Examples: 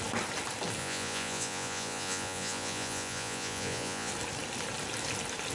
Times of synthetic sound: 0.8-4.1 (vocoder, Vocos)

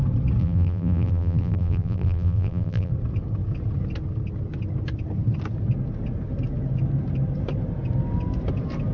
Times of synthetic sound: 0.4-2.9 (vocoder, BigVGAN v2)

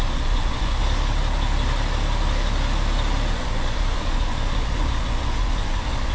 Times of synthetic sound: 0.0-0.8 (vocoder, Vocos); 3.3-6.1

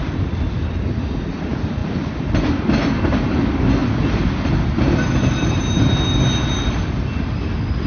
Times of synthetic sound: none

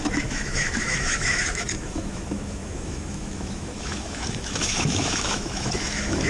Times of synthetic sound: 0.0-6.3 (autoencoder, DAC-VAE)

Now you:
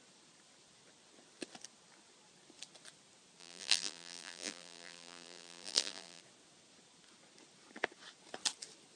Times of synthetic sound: 3.4-6.2 (vocoder, BigVGAN v2)